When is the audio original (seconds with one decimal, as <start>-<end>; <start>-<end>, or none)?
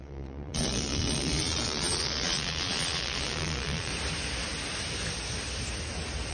3.9-6.3